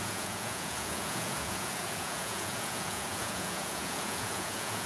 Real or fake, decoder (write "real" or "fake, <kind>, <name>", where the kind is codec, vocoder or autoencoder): fake, vocoder, Vocos